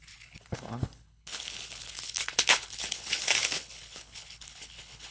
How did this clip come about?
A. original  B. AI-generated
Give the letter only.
B